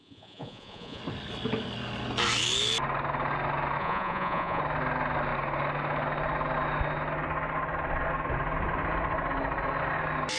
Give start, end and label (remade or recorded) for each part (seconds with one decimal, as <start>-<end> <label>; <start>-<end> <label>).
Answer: 0.0-1.0 remade; 1.0-3.8 recorded; 3.8-4.6 remade; 4.6-10.4 recorded